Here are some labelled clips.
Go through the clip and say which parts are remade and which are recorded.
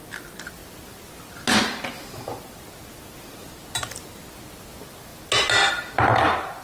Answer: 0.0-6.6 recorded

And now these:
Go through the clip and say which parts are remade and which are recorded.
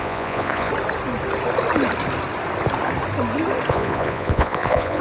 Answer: 0.0-0.7 remade; 0.7-3.7 recorded; 3.7-5.0 remade